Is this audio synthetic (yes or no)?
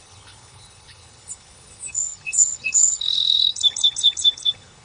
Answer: yes